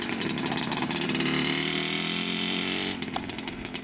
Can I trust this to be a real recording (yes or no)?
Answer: yes